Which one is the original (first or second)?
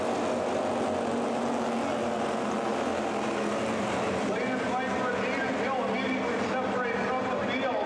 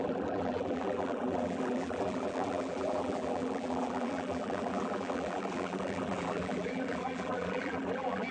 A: first